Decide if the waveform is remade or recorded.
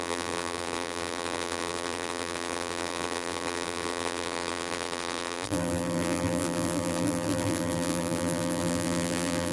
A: remade